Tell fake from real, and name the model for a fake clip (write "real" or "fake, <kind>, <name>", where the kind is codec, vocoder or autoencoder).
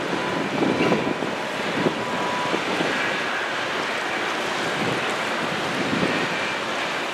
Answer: real